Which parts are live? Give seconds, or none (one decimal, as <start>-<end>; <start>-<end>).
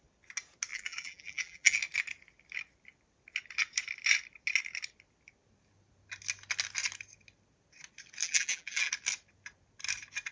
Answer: 0.0-0.7; 1.8-8.2; 8.9-10.3